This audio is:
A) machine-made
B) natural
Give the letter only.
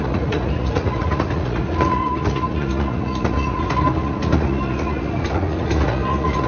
A